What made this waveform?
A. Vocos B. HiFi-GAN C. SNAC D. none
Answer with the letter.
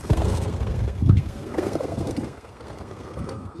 C